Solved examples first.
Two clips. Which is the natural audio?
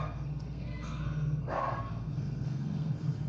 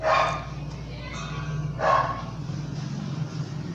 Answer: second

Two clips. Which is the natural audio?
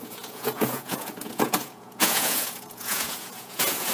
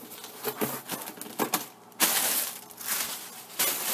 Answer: second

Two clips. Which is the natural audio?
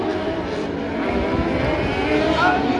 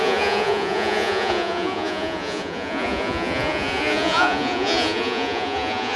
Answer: first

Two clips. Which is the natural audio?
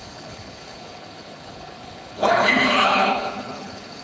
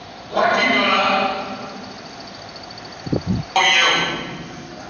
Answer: second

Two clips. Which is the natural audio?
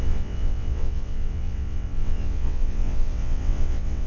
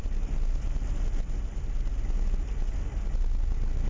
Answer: second